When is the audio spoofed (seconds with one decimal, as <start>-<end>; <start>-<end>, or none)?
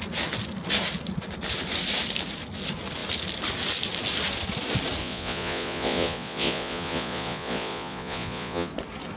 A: 5.0-8.7